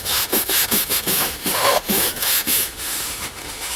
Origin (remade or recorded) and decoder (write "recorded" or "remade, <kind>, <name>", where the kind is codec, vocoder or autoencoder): remade, autoencoder, DAC-VAE